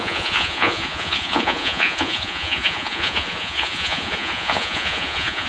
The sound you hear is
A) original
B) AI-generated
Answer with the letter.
B